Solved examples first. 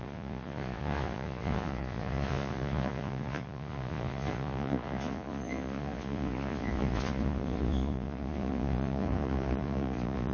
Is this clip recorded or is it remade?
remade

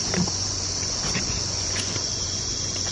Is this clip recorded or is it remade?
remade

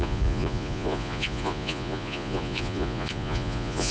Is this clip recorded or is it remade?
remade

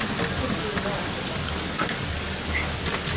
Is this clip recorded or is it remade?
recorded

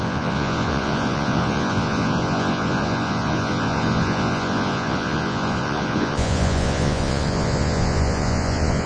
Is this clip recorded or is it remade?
remade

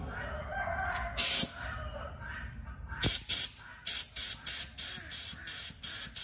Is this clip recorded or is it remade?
recorded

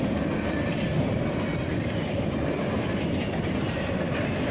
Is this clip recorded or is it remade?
recorded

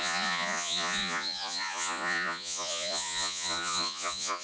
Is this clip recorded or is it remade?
remade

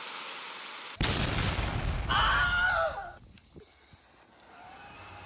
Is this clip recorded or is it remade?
recorded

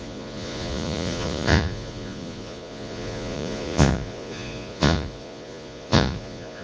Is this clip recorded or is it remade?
remade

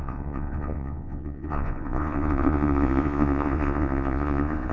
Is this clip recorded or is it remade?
remade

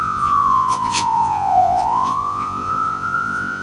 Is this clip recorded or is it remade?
remade